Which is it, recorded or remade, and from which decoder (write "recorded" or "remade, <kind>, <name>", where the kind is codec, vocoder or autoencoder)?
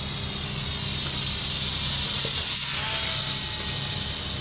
remade, vocoder, BigVGAN v2